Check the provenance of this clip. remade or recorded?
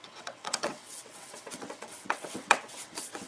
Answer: remade